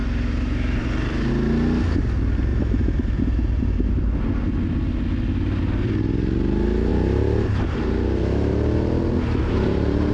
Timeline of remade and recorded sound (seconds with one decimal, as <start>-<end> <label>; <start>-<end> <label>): 0.0-1.3 remade; 1.3-2.5 recorded; 2.5-3.9 remade; 3.9-6.9 recorded; 6.9-10.1 remade